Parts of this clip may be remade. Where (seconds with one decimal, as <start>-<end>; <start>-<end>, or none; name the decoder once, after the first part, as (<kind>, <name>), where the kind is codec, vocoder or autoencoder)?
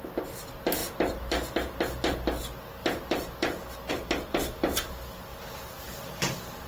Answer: 5.3-6.7 (vocoder, BigVGAN v2)